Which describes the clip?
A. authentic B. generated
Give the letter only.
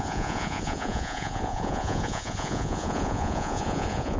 B